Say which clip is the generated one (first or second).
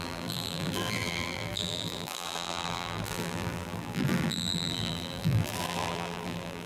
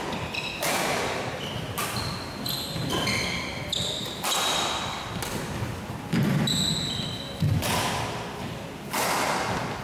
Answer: first